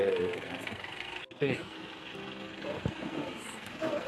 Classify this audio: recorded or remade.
remade